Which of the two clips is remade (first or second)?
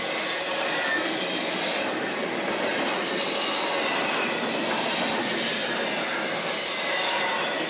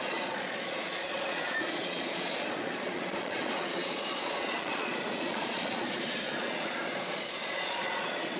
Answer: second